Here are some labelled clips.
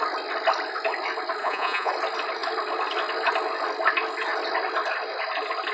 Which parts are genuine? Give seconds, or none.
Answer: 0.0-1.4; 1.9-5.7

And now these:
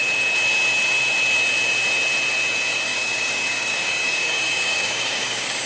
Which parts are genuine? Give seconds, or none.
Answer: 0.0-2.7